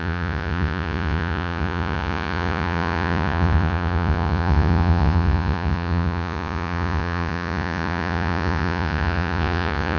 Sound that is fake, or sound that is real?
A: fake